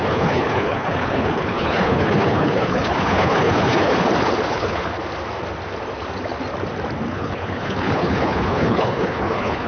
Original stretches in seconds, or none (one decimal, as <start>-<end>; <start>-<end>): 3.9-4.5; 4.9-7.1